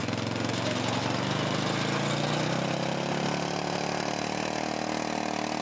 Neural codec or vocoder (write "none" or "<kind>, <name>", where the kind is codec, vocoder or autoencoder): none